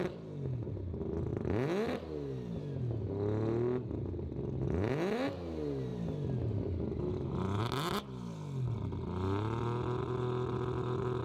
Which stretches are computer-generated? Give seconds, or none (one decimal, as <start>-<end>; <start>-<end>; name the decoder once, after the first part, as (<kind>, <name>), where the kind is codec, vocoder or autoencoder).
none